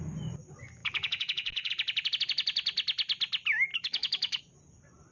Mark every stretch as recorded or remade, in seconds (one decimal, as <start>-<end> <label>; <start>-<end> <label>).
0.0-0.8 recorded; 0.8-1.7 remade; 1.7-3.7 recorded; 3.7-4.4 remade; 4.4-5.1 recorded